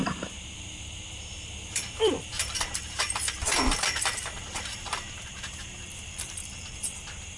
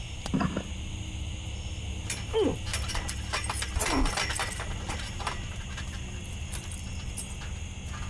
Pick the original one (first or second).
second